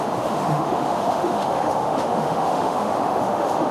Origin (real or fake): fake